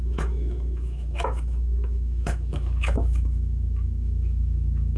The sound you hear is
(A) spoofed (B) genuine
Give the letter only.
A